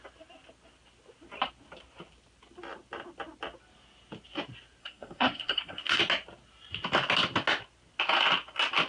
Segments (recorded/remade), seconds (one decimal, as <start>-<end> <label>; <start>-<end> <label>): 0.0-4.8 recorded; 4.8-6.0 remade; 6.0-8.9 recorded